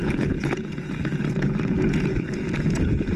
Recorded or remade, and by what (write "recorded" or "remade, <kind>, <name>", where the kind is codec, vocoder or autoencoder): remade, vocoder, Vocos